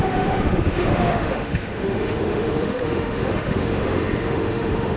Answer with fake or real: fake